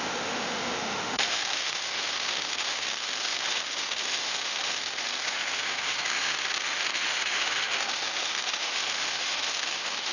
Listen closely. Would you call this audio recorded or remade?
remade